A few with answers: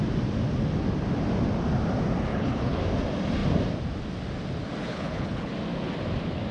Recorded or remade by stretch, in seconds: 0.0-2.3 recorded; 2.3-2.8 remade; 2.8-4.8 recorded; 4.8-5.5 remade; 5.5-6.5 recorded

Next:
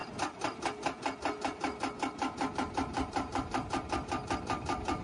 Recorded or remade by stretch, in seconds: 0.0-2.5 recorded; 2.5-5.0 remade

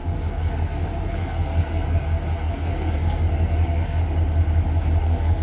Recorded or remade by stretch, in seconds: 0.0-4.0 remade; 4.0-5.0 recorded; 5.0-5.4 remade

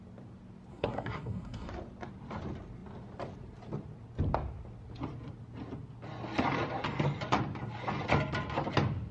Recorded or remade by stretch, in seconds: 0.0-0.7 recorded; 0.7-1.7 remade; 1.7-9.1 recorded

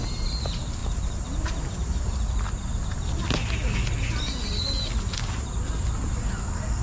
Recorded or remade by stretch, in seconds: 0.0-6.8 recorded

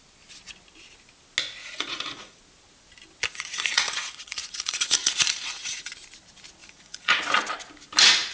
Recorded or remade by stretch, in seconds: 0.0-1.6 recorded; 1.6-2.4 remade; 2.4-3.3 recorded; 3.3-5.9 remade; 5.9-6.6 recorded; 6.6-7.2 remade; 7.2-8.3 recorded